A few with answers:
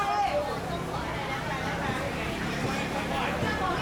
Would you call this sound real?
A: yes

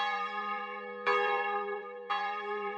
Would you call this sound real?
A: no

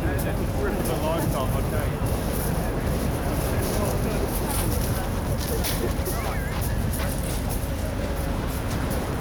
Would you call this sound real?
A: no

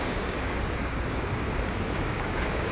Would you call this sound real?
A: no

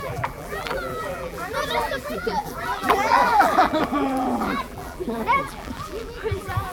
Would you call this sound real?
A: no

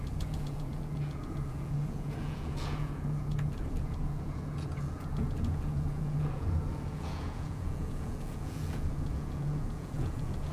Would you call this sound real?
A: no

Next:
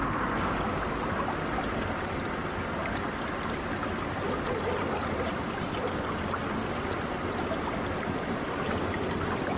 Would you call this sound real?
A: yes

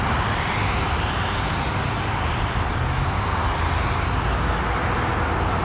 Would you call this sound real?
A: yes